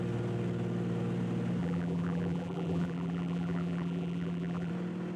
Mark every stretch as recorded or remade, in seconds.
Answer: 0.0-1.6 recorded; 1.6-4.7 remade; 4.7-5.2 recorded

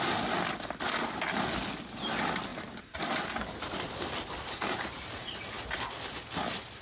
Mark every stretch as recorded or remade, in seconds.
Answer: 0.0-2.5 recorded; 2.5-5.5 remade; 5.5-6.8 recorded

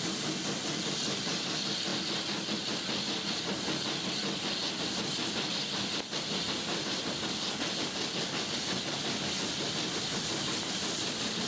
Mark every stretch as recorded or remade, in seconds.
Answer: 0.0-11.5 recorded